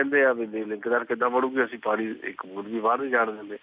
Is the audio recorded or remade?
recorded